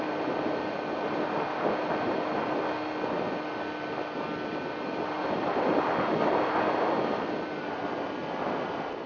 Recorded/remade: recorded